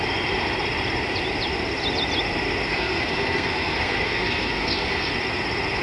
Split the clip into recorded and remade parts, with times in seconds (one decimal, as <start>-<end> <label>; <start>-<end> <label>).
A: 0.0-2.7 recorded; 2.7-5.1 remade; 5.1-5.8 recorded